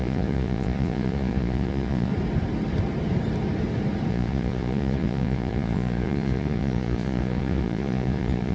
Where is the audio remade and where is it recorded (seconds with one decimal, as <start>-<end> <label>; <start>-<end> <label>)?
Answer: 0.0-2.1 remade; 2.1-4.1 recorded; 4.1-8.5 remade